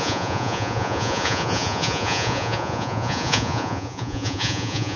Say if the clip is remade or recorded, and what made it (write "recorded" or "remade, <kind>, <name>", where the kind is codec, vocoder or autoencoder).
remade, vocoder, Vocos